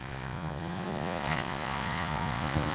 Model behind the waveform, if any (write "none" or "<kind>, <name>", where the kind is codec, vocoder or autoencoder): vocoder, Vocos